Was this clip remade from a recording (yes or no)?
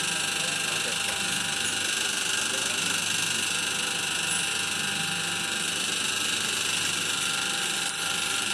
no